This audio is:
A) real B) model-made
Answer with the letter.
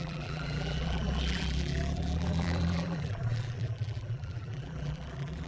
B